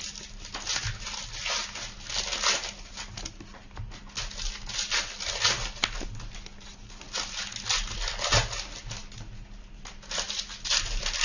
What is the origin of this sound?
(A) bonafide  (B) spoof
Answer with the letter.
A